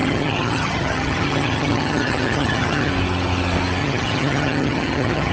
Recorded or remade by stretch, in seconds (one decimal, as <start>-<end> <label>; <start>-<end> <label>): 0.0-2.9 remade; 2.9-3.8 recorded; 3.8-5.3 remade